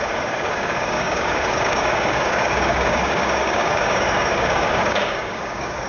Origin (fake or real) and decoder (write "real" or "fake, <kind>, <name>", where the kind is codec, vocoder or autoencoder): fake, codec, DAC